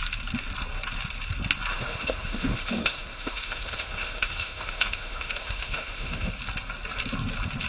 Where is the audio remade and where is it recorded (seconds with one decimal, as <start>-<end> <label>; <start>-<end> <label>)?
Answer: 0.0-1.7 recorded; 1.7-6.3 remade; 6.3-7.7 recorded